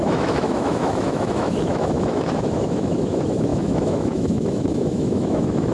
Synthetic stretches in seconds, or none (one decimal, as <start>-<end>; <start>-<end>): 0.0-5.7